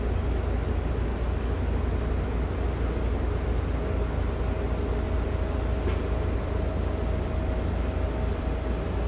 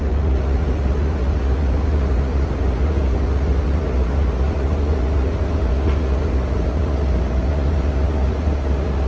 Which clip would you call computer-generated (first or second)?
second